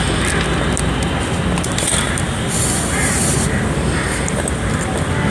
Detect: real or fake real